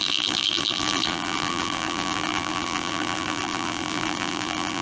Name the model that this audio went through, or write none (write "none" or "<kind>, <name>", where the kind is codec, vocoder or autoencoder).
vocoder, BigVGAN v2